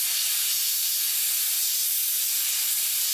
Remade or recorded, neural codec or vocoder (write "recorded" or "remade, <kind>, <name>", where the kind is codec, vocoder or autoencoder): recorded